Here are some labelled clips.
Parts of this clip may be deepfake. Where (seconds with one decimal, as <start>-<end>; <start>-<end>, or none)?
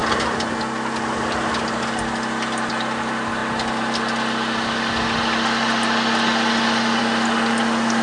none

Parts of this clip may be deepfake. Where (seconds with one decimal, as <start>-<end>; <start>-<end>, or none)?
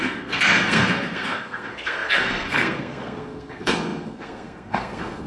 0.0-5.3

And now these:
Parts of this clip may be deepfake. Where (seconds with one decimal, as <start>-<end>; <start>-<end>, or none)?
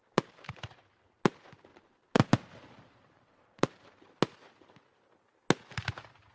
0.0-0.6; 1.7-4.1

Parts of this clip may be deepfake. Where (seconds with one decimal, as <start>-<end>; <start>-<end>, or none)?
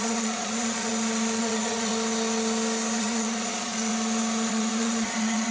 0.0-0.9; 1.4-1.9; 3.0-3.9; 4.5-5.5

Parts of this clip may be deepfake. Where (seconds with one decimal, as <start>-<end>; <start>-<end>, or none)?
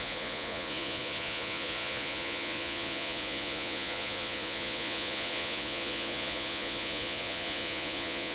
0.0-8.3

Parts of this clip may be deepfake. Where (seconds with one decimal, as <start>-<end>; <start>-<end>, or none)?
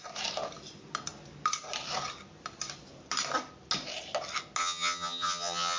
4.6-5.8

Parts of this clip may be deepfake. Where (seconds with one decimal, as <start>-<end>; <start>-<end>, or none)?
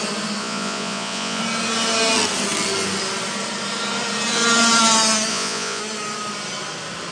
0.4-1.4; 5.3-5.8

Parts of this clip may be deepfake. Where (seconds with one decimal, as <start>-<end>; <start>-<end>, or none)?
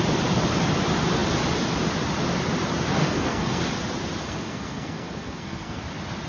3.0-3.6; 4.2-5.8